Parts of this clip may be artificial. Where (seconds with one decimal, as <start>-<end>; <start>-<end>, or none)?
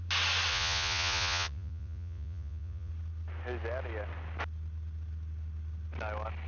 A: 0.5-2.9